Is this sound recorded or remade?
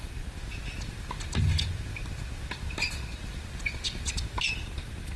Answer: recorded